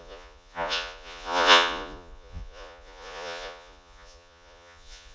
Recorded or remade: remade